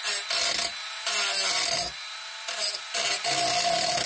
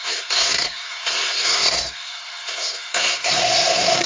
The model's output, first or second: second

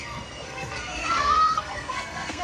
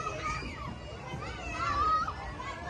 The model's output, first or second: first